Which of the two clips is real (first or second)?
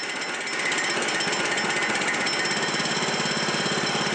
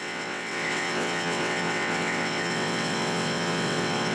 first